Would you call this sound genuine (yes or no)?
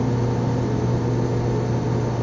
yes